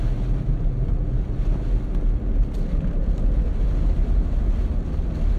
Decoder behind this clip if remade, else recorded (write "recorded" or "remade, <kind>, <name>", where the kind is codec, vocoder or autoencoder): recorded